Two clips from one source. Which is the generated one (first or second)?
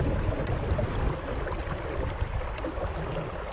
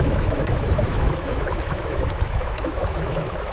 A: second